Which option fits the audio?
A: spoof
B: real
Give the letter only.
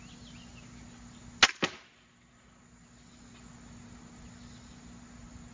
B